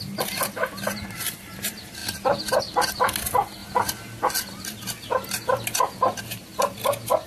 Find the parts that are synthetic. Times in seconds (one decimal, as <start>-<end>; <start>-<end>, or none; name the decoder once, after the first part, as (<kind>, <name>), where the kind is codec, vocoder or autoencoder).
none